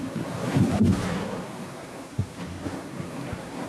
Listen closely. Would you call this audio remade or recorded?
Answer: remade